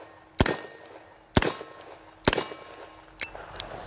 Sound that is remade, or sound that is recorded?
recorded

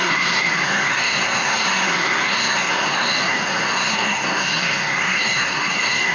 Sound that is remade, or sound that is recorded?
remade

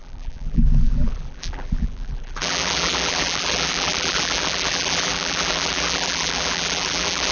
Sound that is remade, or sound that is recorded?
remade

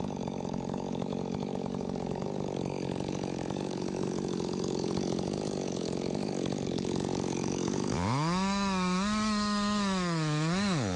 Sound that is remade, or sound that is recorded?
remade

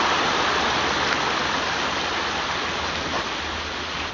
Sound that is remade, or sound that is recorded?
recorded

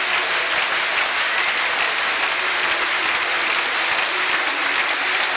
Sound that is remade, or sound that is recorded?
recorded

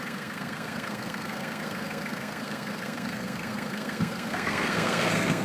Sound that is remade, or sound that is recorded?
remade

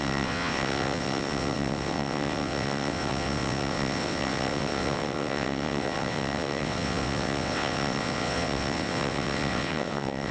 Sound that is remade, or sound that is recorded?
remade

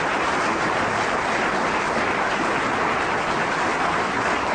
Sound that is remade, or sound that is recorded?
recorded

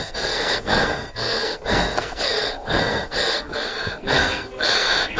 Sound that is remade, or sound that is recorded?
remade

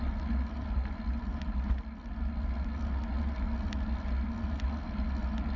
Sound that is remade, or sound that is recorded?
recorded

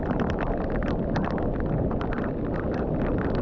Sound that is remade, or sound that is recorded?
remade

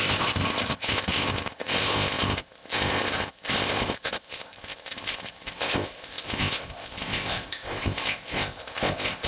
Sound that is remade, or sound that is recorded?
remade